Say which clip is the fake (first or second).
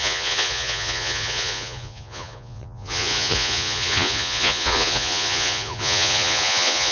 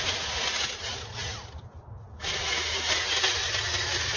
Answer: first